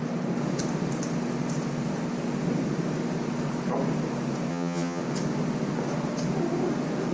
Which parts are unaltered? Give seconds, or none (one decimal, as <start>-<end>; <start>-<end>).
0.0-4.5; 5.0-7.1